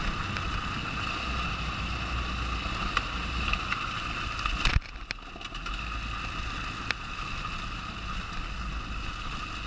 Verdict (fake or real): real